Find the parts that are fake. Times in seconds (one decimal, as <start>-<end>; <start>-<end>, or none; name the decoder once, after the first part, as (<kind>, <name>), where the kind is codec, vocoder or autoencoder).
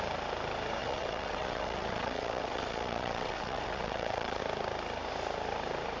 0.8-4.4 (vocoder, WaveNeXt)